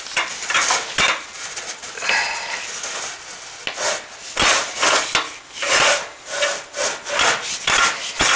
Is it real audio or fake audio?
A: real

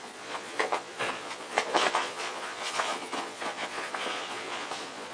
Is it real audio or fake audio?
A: fake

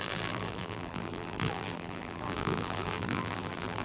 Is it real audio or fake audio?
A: fake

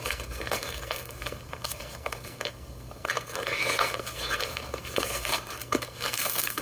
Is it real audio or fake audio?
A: fake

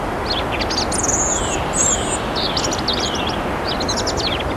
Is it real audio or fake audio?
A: real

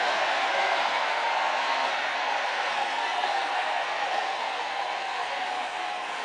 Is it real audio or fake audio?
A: fake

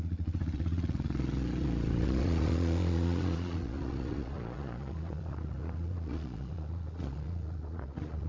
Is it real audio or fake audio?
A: fake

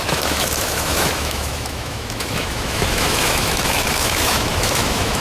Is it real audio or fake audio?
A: fake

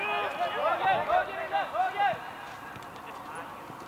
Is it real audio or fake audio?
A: real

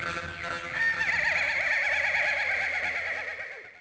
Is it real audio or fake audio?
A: real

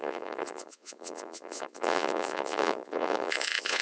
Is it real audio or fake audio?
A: fake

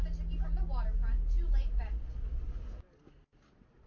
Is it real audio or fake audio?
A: real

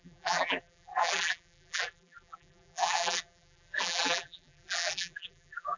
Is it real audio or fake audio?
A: fake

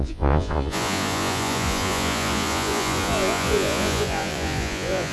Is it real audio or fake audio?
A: fake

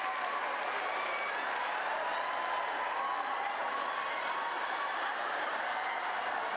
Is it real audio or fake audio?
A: real